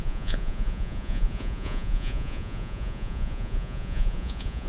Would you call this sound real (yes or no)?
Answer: no